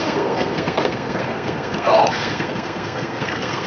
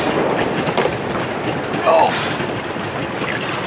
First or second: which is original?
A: second